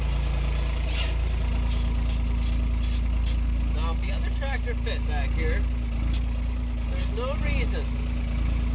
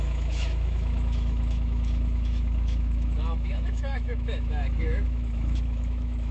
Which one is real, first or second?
first